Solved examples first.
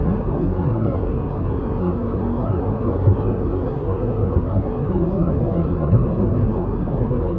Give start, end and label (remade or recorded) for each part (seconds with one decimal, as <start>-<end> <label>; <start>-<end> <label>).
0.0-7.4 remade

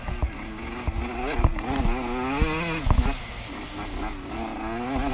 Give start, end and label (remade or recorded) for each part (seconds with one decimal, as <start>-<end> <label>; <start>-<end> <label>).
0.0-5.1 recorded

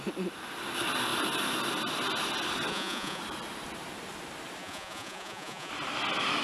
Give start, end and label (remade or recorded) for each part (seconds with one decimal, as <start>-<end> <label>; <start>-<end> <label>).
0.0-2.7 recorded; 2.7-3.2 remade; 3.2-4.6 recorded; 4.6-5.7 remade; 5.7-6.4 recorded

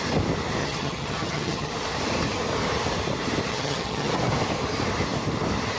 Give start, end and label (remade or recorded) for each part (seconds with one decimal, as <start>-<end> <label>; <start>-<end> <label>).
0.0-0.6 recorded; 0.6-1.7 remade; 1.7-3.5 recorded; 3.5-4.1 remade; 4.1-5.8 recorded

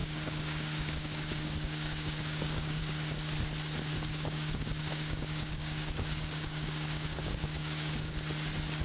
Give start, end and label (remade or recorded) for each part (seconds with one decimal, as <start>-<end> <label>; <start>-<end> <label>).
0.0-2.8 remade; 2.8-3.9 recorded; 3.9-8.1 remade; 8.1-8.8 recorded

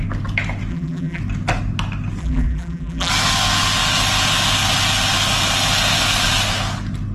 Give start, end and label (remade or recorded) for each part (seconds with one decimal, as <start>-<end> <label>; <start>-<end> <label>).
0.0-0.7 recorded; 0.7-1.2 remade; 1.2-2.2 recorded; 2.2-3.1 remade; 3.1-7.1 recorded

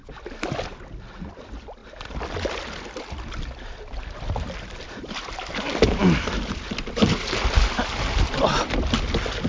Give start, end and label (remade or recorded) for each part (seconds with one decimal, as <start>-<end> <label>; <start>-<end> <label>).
0.0-9.5 recorded

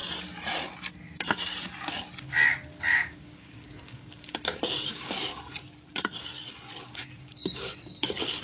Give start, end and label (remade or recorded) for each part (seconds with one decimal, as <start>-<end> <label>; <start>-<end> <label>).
0.0-2.9 recorded; 2.9-5.3 remade; 5.3-6.8 recorded; 6.8-8.4 remade